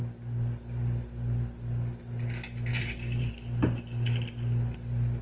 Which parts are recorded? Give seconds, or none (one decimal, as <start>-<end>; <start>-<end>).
0.0-2.7; 3.3-5.2